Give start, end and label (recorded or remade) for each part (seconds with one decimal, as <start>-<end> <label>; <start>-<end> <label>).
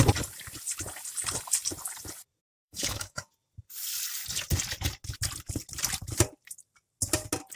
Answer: 0.0-2.4 recorded; 2.4-3.3 remade; 3.3-7.6 recorded